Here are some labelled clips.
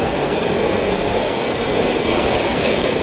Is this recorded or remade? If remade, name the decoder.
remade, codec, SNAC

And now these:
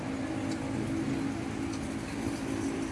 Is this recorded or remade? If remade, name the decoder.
recorded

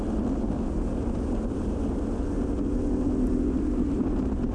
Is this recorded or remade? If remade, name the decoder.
recorded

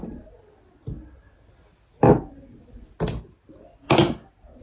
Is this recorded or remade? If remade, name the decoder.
recorded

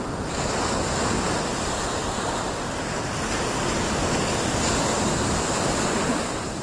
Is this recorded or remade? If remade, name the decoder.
recorded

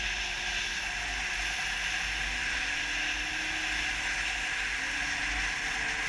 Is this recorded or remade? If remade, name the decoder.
recorded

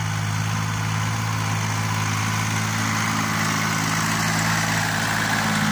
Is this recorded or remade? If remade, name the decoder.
recorded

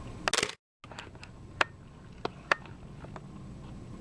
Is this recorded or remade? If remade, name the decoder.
recorded